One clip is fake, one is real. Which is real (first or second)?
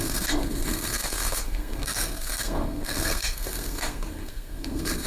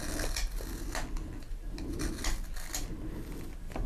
second